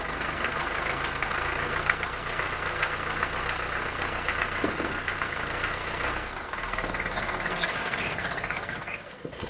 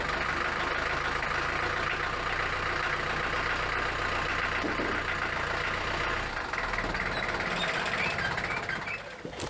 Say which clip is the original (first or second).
second